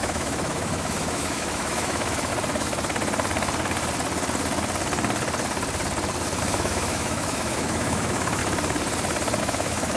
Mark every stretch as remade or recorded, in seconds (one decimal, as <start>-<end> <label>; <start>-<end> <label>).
0.0-2.3 remade; 2.3-6.4 recorded; 6.4-8.4 remade; 8.4-9.4 recorded; 9.4-10.0 remade